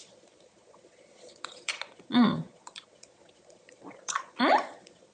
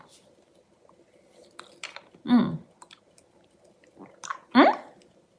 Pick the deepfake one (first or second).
first